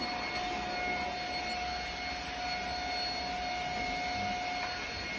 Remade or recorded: recorded